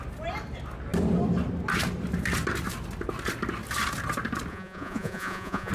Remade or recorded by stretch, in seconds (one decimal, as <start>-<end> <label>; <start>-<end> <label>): 0.0-4.5 recorded; 4.5-5.7 remade